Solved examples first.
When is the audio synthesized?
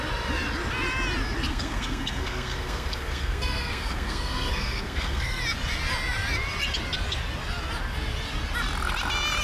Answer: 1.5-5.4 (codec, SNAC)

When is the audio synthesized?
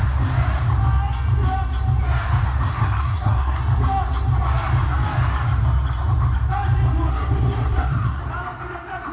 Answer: 2.7-3.6 (codec, SNAC); 7.1-8.2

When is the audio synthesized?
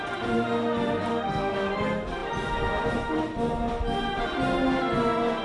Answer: 1.1-1.7 (codec, SNAC)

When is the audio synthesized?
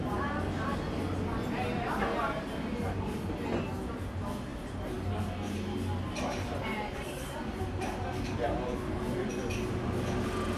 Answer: none